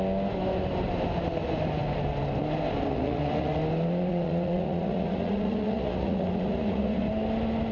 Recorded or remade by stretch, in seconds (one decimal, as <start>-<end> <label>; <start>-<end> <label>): 0.0-2.9 recorded; 2.9-3.6 remade; 3.6-4.1 recorded; 4.1-7.1 remade; 7.1-7.7 recorded